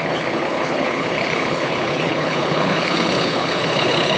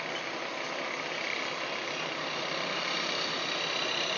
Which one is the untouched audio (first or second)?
second